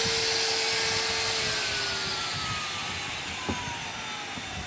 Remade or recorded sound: recorded